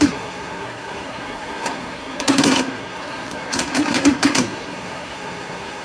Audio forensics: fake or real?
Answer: fake